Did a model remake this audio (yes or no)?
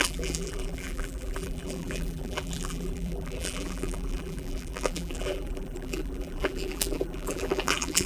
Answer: yes